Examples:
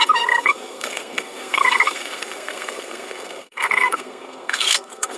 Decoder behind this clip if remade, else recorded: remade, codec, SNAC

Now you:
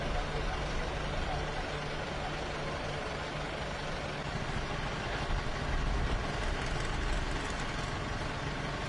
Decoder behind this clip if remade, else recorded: recorded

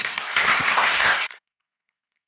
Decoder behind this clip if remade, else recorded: remade, codec, SNAC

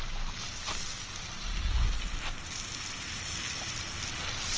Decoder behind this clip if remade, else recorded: recorded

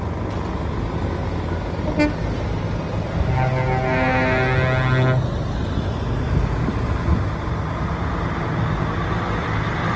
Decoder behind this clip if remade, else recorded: recorded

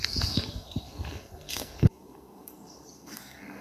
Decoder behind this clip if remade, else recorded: remade, codec, SNAC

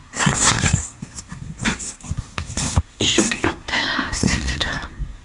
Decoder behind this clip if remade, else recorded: remade, codec, SNAC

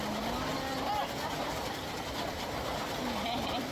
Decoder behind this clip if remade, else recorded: recorded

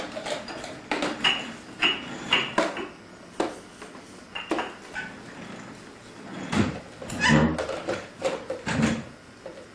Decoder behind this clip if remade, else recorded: recorded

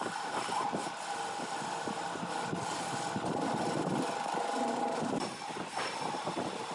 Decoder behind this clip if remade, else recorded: recorded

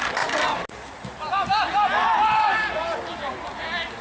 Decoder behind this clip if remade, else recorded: recorded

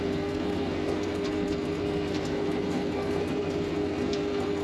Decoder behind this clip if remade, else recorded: remade, codec, SNAC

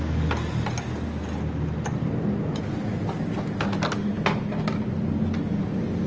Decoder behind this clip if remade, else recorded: recorded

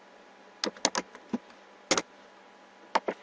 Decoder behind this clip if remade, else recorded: recorded